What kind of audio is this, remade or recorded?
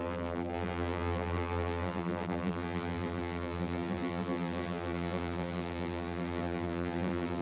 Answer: remade